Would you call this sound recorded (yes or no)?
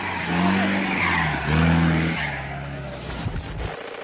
yes